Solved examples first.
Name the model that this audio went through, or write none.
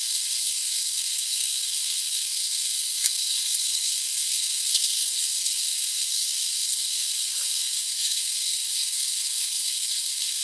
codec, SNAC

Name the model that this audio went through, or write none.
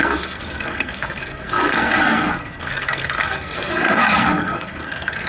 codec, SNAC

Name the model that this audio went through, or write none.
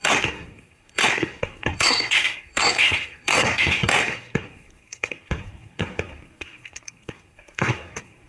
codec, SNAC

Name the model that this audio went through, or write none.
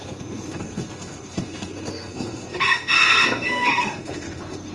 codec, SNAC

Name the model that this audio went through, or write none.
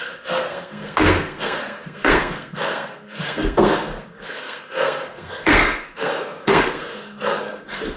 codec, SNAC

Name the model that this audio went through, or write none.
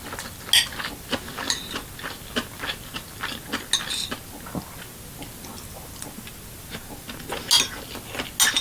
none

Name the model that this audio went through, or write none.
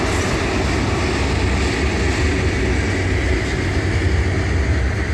none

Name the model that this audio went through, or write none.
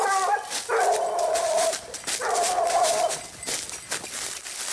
none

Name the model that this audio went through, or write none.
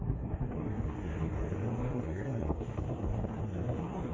codec, SNAC